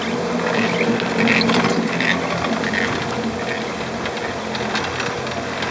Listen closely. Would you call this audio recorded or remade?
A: recorded